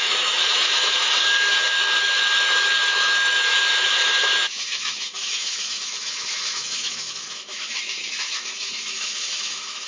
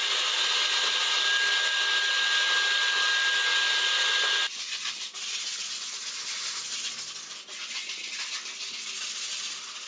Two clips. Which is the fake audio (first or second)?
first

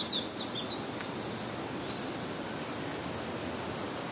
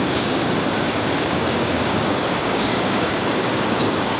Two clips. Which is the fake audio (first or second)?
second